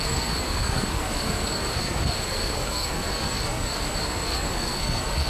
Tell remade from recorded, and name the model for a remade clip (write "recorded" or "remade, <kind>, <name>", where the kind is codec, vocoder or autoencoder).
remade, codec, SNAC